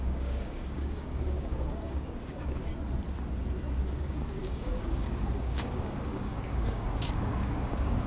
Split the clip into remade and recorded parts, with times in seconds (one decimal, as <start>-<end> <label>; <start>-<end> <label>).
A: 0.0-2.7 remade; 2.7-3.7 recorded; 3.7-8.1 remade